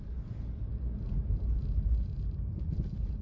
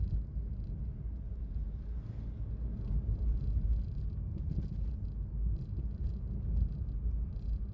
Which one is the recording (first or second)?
second